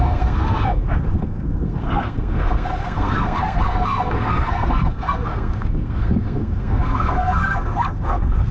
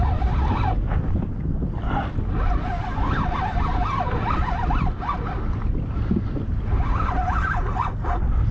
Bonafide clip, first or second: second